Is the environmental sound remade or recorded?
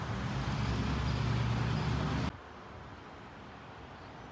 recorded